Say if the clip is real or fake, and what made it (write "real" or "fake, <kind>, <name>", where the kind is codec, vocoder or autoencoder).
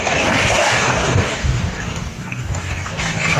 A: fake, codec, DAC